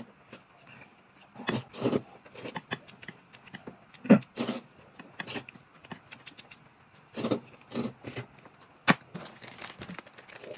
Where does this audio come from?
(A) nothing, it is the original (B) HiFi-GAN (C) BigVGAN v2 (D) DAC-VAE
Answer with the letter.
A